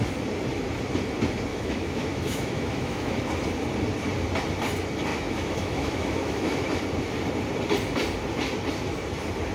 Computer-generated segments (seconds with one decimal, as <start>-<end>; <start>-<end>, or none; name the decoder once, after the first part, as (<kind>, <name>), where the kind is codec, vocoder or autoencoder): 1.5-3.2 (autoencoder, DAC-VAE); 5.1-6.8